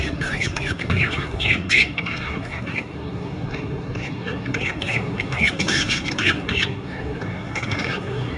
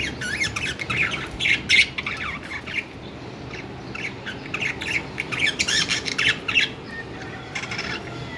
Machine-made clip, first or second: first